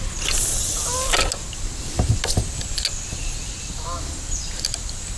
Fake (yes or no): no